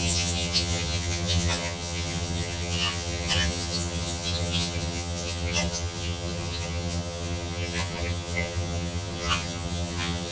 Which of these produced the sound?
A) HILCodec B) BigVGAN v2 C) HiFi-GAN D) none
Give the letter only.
C